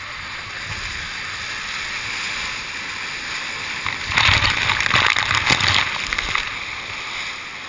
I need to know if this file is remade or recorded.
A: recorded